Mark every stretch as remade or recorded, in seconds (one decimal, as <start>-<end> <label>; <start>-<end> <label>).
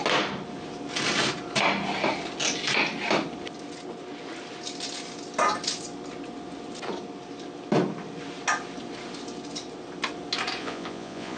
0.0-10.6 recorded; 10.6-11.4 remade